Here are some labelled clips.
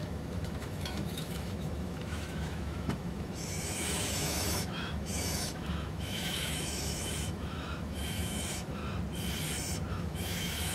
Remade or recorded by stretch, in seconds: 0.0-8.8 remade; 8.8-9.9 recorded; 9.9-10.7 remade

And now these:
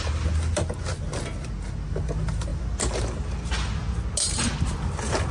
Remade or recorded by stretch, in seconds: 0.0-5.3 recorded

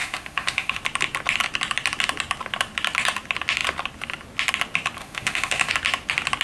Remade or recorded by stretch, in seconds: 0.0-0.8 remade; 0.8-5.0 recorded; 5.0-5.7 remade; 5.7-6.4 recorded

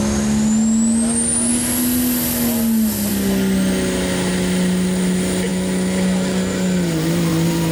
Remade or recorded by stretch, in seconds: 0.0-7.7 recorded